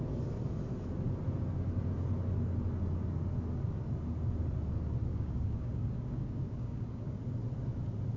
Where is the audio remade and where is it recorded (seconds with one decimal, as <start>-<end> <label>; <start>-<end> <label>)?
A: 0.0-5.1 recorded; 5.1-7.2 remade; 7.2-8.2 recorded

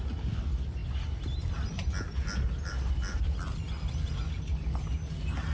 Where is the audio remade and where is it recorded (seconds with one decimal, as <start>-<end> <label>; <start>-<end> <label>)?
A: 0.0-5.5 recorded

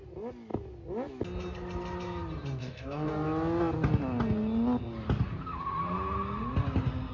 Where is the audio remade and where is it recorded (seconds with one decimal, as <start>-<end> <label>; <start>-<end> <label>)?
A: 0.0-2.6 recorded; 2.6-3.1 remade; 3.1-7.1 recorded

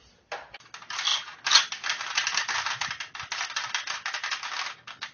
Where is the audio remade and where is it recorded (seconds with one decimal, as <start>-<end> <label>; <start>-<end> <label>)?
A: 0.0-5.1 recorded

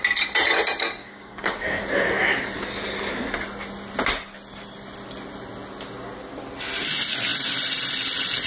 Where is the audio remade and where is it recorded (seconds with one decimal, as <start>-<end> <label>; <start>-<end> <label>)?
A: 0.0-1.0 recorded; 1.0-1.8 remade; 1.8-8.5 recorded

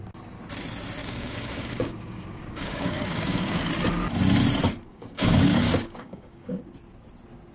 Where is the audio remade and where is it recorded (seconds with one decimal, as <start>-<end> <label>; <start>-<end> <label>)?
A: 0.0-1.0 recorded; 1.0-3.7 remade; 3.7-4.9 recorded; 4.9-6.6 remade; 6.6-7.5 recorded

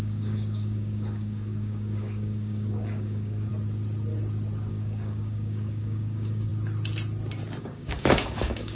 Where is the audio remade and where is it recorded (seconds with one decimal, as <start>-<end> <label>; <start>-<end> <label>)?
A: 0.0-3.5 remade; 3.5-4.7 recorded; 4.7-6.5 remade; 6.5-7.6 recorded; 7.6-8.7 remade

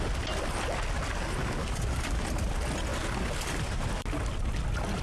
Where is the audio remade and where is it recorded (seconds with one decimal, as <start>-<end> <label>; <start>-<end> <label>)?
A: 0.0-1.6 recorded; 1.6-2.2 remade; 2.2-5.0 recorded